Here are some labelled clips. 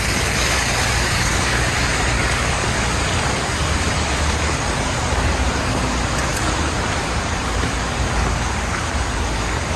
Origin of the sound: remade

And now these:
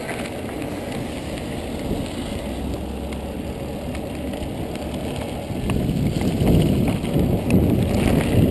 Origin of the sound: recorded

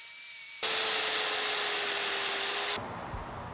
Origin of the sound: recorded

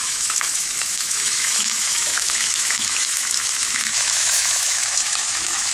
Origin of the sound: remade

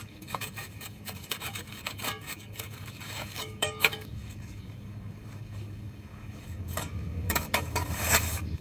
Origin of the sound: remade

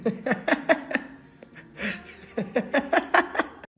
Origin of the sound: recorded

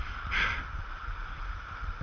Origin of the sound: recorded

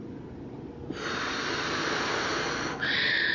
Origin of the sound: recorded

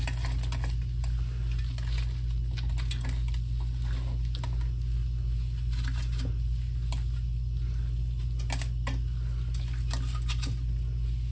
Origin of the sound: recorded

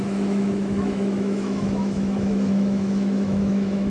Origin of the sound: remade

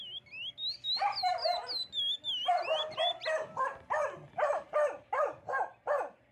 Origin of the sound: recorded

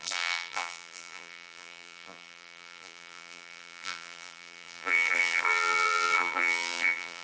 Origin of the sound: remade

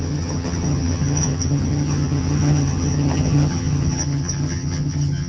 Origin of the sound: remade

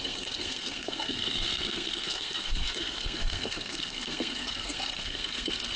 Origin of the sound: remade